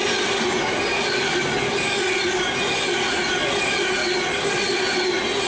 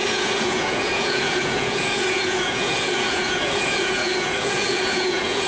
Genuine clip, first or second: first